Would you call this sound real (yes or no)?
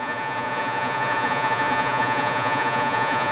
no